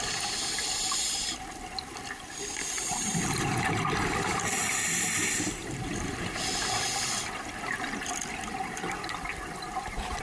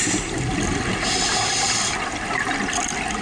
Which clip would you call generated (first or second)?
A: first